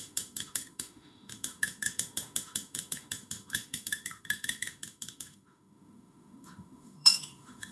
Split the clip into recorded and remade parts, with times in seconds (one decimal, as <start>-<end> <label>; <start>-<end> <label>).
0.0-7.7 remade